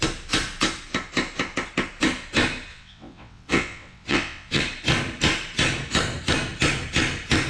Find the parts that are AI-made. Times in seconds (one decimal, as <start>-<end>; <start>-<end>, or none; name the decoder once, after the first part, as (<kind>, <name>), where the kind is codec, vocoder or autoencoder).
2.7-4.6 (vocoder, WaveNeXt)